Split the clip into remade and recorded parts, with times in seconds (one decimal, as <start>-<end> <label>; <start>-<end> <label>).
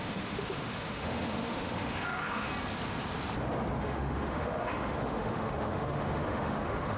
0.0-2.5 remade; 2.5-3.8 recorded; 3.8-7.0 remade